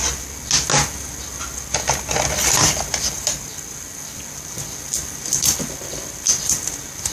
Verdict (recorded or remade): recorded